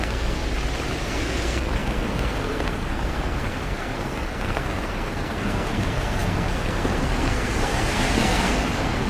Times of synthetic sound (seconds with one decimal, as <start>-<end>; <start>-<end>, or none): 0.0-0.4; 1.0-9.1